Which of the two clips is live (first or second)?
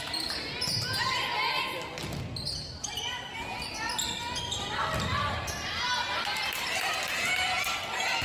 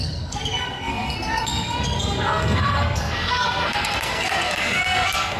first